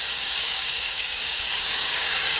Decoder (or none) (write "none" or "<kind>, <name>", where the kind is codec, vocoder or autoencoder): codec, DAC